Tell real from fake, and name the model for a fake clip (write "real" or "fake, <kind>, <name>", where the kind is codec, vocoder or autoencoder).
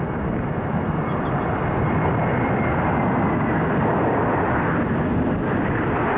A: real